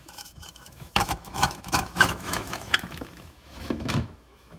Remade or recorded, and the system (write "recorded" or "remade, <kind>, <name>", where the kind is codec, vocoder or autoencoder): remade, autoencoder, DAC-VAE